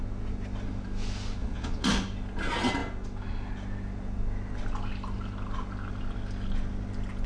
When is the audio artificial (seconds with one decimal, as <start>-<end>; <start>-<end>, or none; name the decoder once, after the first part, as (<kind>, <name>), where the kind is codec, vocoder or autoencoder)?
1.4-1.9 (vocoder, Vocos)